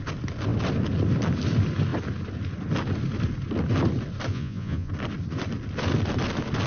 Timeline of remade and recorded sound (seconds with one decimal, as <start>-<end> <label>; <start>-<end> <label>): 0.0-4.3 recorded; 4.3-4.9 remade; 4.9-6.7 recorded